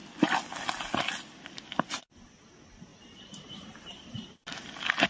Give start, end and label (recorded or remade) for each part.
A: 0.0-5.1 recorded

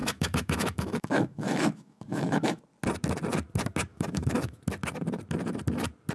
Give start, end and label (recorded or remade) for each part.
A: 0.0-2.6 remade; 2.6-3.9 recorded; 3.9-4.6 remade; 4.6-6.1 recorded

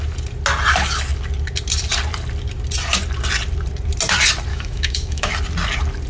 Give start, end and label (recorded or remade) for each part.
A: 0.0-4.5 recorded; 4.5-5.3 remade; 5.3-6.1 recorded